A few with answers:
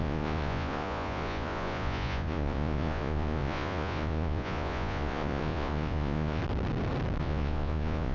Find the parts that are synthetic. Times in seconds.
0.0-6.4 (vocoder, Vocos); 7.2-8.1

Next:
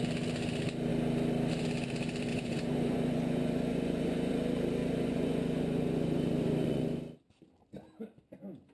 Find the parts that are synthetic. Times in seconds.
2.3-4.3 (vocoder, Vocos); 4.8-7.0

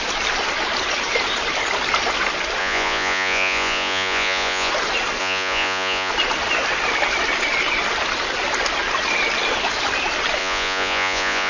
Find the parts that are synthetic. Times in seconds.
2.6-4.7 (vocoder, Vocos); 5.2-6.1; 10.4-11.5

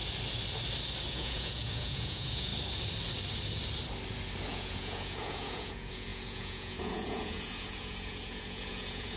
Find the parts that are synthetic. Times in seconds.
1.1-2.5 (vocoder, Vocos); 4.5-9.2

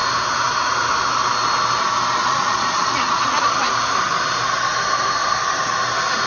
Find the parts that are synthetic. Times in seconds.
2.2-3.5 (vocoder, Vocos)